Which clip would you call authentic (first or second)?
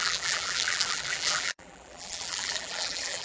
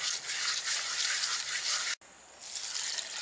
second